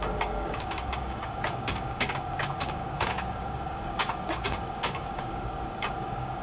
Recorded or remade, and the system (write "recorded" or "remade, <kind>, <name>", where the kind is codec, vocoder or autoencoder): remade, codec, DAC